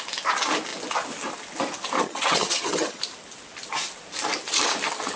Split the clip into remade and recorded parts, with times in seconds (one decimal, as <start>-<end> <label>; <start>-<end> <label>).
0.0-2.0 recorded; 2.0-3.0 remade; 3.0-5.2 recorded